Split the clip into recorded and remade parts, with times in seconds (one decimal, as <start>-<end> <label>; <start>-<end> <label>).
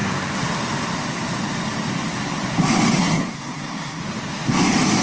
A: 0.0-3.0 recorded; 3.0-4.0 remade; 4.0-5.0 recorded